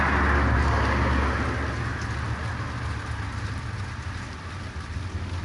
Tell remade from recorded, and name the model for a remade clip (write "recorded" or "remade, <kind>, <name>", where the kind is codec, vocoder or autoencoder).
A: recorded